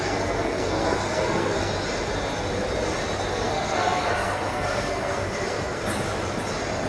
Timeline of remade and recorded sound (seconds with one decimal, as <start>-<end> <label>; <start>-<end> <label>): 0.0-1.7 remade; 1.7-3.3 recorded; 3.3-5.8 remade; 5.8-6.9 recorded